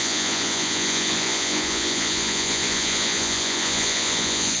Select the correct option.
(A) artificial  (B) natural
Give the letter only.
A